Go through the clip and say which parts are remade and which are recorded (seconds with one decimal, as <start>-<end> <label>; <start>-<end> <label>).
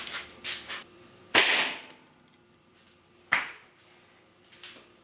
0.0-5.0 remade